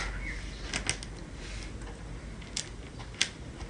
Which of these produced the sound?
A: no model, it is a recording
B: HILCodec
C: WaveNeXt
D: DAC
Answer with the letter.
A